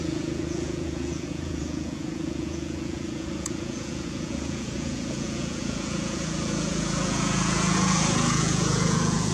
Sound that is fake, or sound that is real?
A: fake